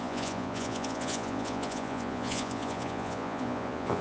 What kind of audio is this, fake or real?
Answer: fake